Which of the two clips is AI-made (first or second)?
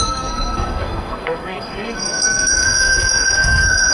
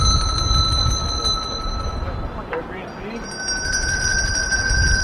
first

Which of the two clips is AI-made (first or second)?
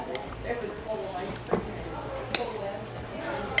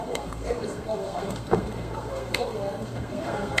second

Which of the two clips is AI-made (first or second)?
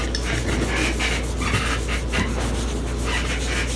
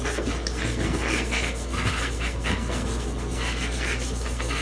second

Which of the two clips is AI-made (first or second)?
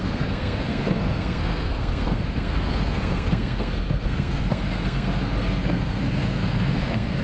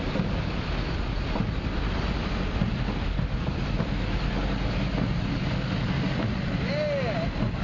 first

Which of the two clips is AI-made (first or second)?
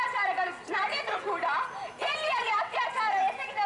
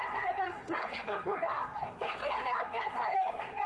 second